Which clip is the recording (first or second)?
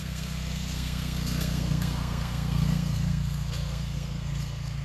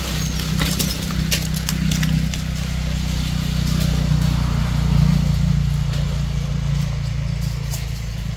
second